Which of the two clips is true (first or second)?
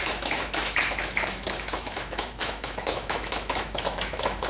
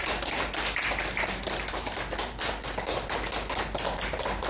second